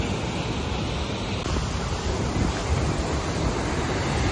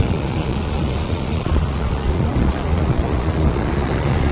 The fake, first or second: second